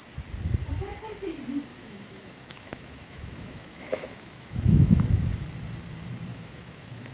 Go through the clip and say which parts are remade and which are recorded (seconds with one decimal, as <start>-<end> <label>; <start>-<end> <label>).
0.0-1.7 recorded; 1.7-5.0 remade; 5.0-6.3 recorded; 6.3-7.1 remade